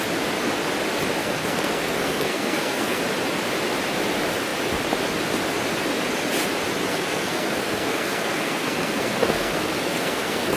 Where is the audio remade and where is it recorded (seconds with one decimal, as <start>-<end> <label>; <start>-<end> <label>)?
0.0-1.2 recorded; 1.2-3.0 remade; 3.0-6.9 recorded; 6.9-10.6 remade